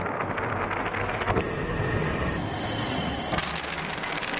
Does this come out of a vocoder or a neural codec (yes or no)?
no